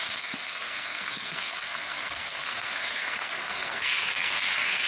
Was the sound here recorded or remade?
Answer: remade